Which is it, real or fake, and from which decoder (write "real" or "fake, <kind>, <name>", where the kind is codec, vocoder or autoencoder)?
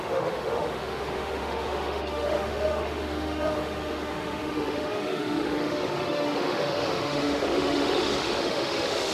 fake, autoencoder, DAC-VAE